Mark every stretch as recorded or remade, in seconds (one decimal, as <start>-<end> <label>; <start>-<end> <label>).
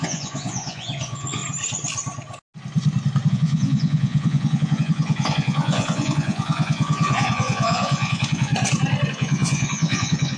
0.0-1.4 remade; 1.4-3.3 recorded; 3.3-8.5 remade; 8.5-9.1 recorded; 9.1-10.4 remade